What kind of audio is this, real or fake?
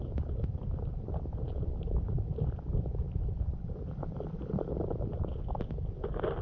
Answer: real